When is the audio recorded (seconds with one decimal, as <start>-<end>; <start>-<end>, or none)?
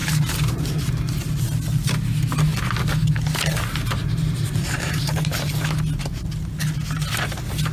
1.0-4.0; 5.5-7.7